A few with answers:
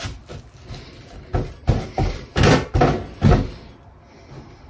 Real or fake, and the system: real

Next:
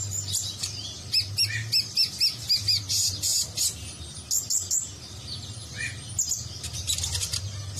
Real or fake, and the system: real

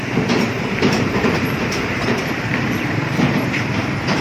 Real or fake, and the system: fake, vocoder, BigVGAN v2